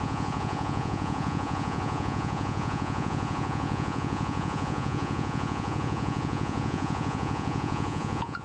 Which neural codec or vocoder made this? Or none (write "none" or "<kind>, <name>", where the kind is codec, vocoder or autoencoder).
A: vocoder, Vocos